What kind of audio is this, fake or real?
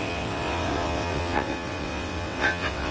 fake